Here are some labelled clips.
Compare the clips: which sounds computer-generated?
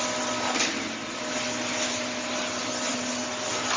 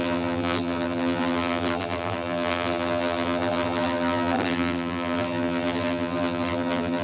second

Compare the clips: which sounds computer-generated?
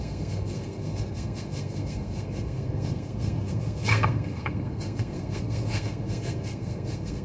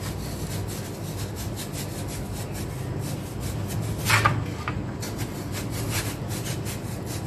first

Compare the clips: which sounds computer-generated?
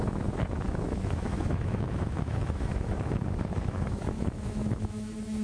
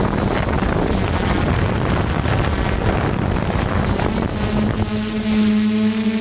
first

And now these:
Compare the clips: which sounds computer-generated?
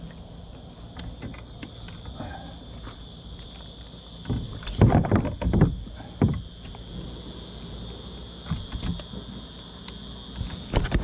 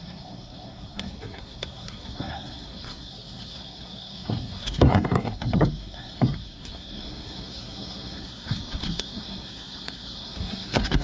second